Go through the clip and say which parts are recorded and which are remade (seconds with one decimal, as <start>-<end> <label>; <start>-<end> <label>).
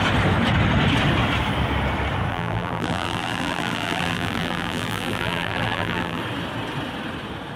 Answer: 0.0-2.3 recorded; 2.3-6.2 remade; 6.2-7.6 recorded